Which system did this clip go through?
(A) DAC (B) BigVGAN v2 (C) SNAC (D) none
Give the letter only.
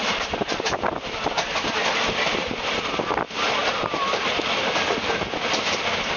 B